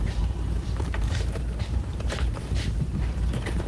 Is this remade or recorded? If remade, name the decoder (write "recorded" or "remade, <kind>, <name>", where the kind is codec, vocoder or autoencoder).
remade, vocoder, BigVGAN v2